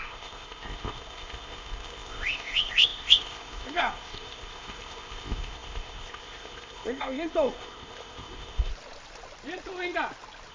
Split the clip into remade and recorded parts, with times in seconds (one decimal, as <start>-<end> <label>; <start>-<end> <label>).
0.0-8.7 remade; 8.7-10.5 recorded

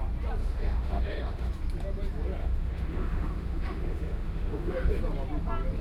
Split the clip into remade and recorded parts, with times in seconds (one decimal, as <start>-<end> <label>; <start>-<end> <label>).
0.0-0.4 recorded; 0.4-1.5 remade; 1.5-2.4 recorded; 2.4-5.0 remade; 5.0-5.8 recorded

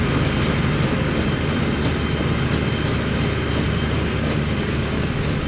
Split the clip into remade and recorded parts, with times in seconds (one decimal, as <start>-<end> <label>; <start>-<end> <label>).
0.0-3.4 recorded; 3.4-5.0 remade; 5.0-5.5 recorded

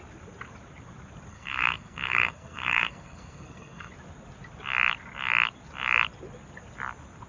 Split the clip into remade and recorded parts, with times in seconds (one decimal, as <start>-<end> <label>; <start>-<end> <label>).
0.0-1.3 recorded; 1.3-3.9 remade; 3.9-7.3 recorded

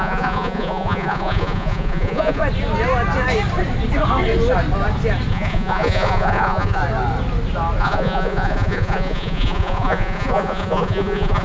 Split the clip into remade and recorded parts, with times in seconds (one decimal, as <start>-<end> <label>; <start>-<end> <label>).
0.0-2.4 remade; 2.4-5.3 recorded; 5.3-6.8 remade; 6.8-7.8 recorded; 7.8-11.4 remade